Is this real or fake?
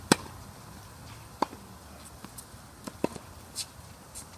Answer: real